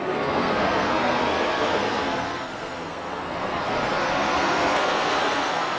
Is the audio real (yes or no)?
no